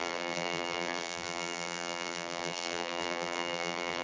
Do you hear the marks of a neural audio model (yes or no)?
yes